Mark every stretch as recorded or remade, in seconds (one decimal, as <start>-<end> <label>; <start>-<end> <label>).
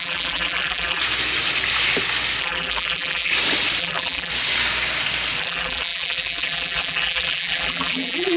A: 0.0-1.0 remade; 1.0-2.4 recorded; 2.4-3.3 remade; 3.3-3.8 recorded; 3.8-4.3 remade; 4.3-5.4 recorded; 5.4-8.4 remade